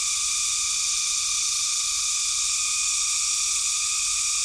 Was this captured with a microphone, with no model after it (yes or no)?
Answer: yes